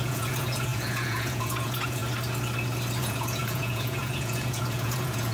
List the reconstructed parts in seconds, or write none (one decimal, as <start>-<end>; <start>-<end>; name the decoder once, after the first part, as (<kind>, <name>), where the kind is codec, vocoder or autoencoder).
0.0-2.0 (vocoder, Vocos); 3.0-5.3